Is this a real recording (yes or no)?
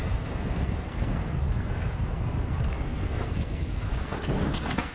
no